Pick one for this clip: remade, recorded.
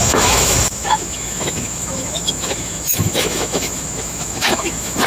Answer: remade